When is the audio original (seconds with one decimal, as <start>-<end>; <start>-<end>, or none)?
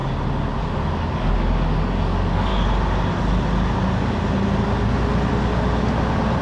0.0-0.6; 2.5-6.4